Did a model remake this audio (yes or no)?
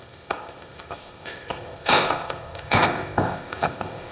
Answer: yes